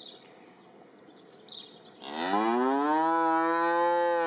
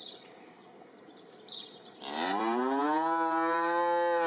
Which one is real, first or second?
first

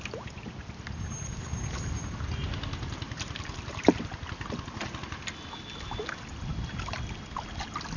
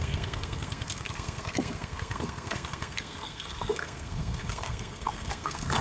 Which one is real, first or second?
first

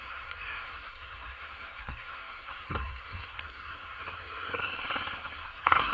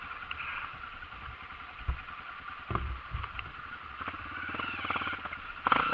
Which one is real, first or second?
second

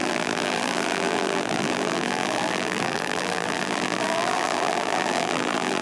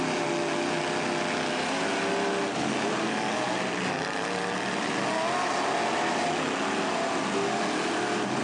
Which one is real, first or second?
second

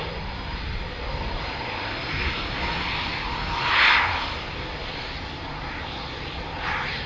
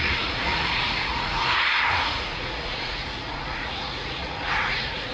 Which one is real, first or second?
first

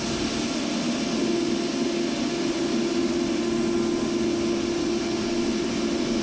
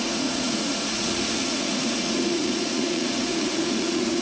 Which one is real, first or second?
first